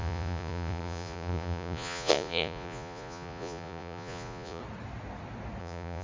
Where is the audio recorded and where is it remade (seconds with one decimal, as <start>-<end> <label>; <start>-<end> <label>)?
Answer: 0.0-4.6 remade; 4.6-5.6 recorded; 5.6-6.0 remade